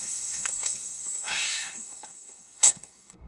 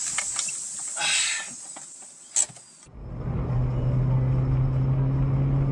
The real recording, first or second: second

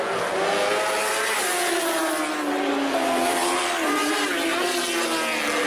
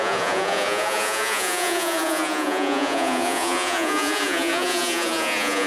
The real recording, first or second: first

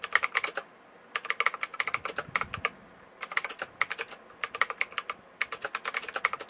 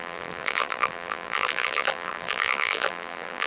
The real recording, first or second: first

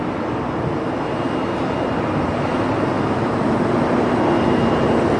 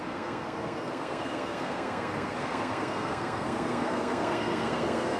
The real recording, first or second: first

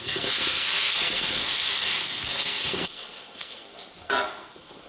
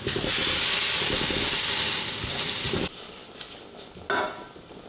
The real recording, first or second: second